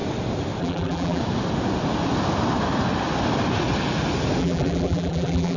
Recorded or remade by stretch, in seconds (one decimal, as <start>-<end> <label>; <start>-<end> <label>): 0.0-0.6 recorded; 0.6-1.2 remade; 1.2-4.4 recorded; 4.4-5.6 remade